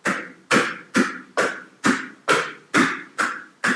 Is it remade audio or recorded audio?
recorded